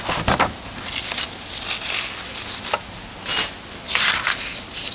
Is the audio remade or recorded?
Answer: recorded